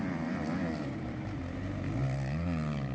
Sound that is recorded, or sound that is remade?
recorded